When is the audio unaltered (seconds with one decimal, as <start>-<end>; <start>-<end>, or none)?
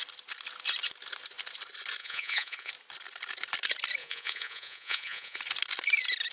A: 0.0-2.0; 2.7-4.0; 5.4-6.3